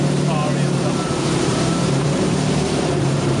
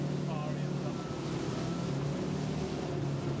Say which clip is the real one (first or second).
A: second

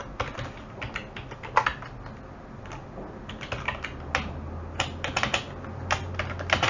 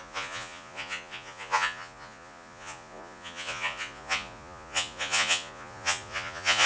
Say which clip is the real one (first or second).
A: first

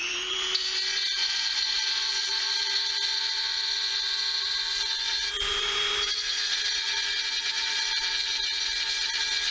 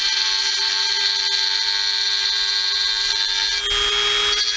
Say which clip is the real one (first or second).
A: second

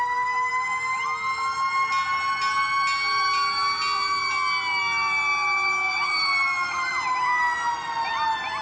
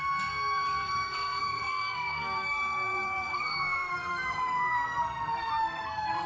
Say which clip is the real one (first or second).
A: first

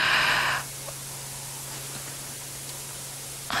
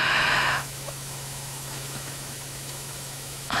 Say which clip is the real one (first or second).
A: first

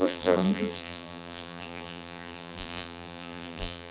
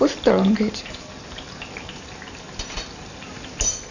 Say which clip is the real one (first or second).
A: second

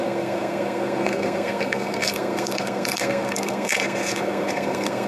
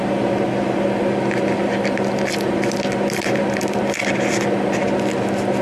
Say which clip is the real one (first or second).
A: second